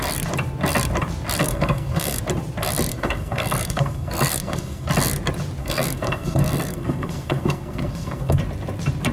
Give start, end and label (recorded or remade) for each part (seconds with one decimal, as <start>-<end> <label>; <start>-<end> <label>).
0.0-1.4 recorded; 1.4-2.2 remade; 2.2-2.9 recorded; 2.9-4.9 remade; 4.9-5.6 recorded; 5.6-8.4 remade; 8.4-9.1 recorded